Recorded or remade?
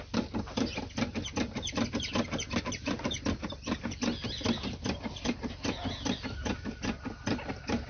recorded